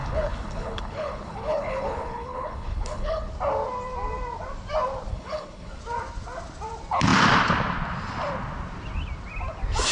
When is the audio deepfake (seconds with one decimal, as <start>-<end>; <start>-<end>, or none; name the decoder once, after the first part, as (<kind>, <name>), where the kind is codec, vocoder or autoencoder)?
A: 0.0-3.3 (codec, HILCodec); 5.1-5.8